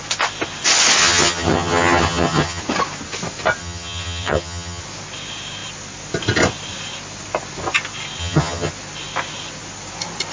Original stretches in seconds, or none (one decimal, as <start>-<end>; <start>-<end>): 0.0-1.0; 2.6-3.6; 4.8-8.2; 8.7-10.3

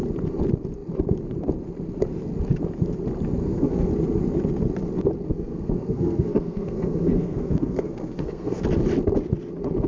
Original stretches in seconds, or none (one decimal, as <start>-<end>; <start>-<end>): 0.0-3.4; 3.9-5.3; 8.6-9.9

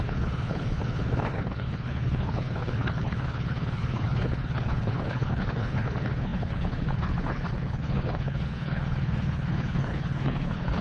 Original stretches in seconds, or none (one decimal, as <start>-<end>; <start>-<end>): none